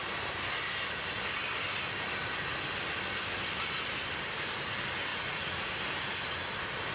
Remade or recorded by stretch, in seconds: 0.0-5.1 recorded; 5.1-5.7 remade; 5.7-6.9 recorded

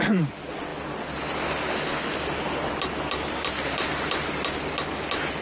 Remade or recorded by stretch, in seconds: 0.0-5.4 recorded